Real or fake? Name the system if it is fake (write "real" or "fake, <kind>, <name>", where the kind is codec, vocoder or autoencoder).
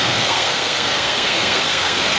fake, codec, SNAC